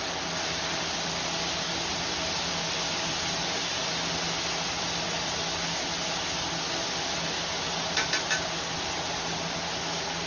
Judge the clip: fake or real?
real